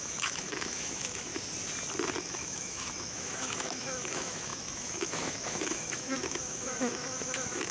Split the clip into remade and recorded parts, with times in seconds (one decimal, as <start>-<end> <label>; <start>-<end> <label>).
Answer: 0.0-1.3 remade; 1.3-2.2 recorded; 2.2-7.7 remade